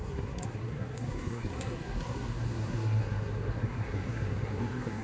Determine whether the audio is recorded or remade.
remade